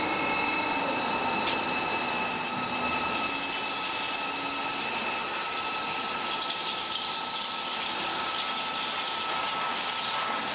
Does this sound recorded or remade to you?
recorded